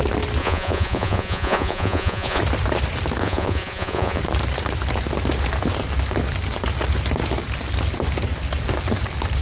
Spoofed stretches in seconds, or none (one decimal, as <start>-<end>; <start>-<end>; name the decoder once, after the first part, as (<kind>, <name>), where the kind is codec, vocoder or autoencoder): 0.4-2.4 (vocoder, Vocos); 3.2-4.2